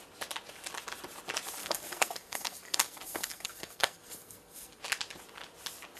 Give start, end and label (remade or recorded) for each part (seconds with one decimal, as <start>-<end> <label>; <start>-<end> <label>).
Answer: 0.0-1.6 recorded; 1.6-4.8 remade; 4.8-6.0 recorded